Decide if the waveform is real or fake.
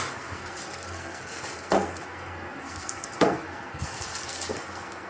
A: fake